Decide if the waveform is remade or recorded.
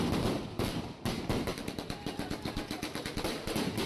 recorded